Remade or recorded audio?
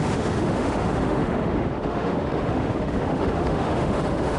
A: remade